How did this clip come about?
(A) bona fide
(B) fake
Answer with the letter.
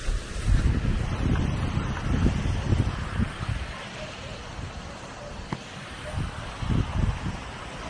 A